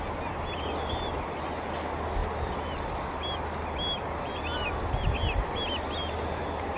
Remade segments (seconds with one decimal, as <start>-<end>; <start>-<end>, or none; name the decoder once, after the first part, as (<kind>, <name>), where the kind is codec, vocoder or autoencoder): none